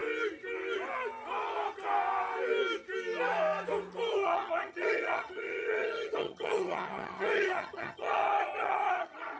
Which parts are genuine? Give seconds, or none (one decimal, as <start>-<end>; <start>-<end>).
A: 0.0-4.1